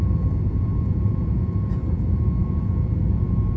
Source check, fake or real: fake